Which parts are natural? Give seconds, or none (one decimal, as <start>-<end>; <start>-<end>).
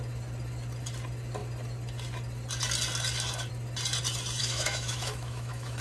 0.0-4.4